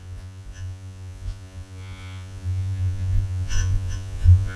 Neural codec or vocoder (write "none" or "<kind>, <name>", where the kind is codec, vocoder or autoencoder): vocoder, Vocos